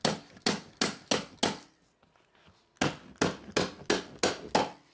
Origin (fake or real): real